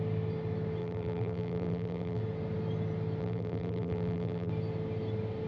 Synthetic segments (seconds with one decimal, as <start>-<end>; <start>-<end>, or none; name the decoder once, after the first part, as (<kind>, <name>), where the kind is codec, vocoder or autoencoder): 0.8-2.2 (vocoder, BigVGAN v2); 3.2-4.5

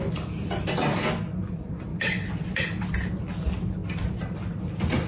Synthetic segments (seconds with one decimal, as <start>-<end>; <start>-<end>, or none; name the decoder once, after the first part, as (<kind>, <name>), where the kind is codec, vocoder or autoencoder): none

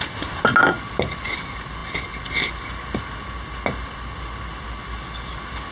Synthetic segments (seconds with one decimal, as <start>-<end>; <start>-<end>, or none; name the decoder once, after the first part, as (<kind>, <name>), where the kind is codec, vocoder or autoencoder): none

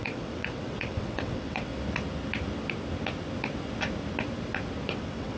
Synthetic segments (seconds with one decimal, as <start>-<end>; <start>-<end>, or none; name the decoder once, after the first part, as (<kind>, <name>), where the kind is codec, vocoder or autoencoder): 0.0-1.7 (vocoder, WaveNeXt); 4.9-5.4

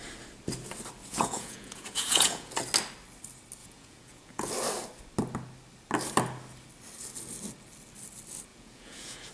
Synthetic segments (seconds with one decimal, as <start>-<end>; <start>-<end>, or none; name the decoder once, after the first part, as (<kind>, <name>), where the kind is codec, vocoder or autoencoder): 1.0-2.5 (vocoder, Vocos); 3.6-4.5; 8.5-9.3

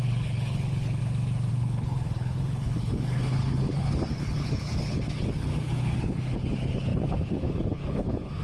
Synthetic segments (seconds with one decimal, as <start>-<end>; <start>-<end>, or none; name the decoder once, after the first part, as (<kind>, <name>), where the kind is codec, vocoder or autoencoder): 0.0-1.0 (codec, HILCodec); 1.5-8.4

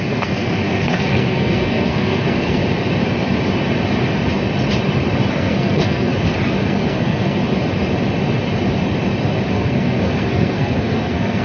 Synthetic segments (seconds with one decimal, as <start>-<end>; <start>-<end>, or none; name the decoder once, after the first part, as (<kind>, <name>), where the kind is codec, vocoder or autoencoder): 0.0-2.6 (codec, SNAC); 5.3-6.1; 6.6-7.4; 9.5-11.4

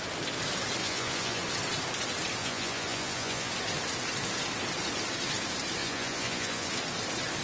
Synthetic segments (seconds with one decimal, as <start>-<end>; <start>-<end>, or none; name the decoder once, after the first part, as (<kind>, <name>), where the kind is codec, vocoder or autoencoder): 0.8-1.4 (vocoder, Vocos); 2.4-3.5; 5.8-6.7